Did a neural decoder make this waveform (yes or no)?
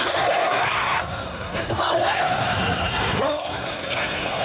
yes